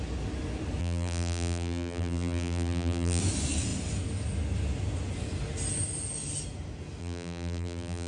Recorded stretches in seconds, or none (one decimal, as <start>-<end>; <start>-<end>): 0.0-0.8; 3.2-7.0